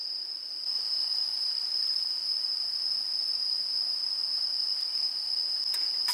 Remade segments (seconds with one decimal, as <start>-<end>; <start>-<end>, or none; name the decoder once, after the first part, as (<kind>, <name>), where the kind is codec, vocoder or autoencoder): 1.1-2.1 (vocoder, BigVGAN v2)